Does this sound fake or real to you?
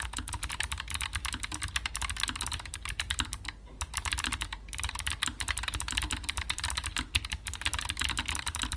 real